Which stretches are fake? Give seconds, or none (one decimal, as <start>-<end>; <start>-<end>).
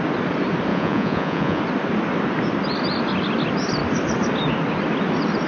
0.7-1.6